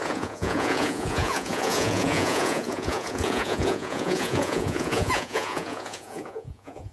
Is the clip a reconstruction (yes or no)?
yes